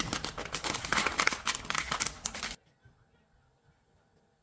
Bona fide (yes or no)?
yes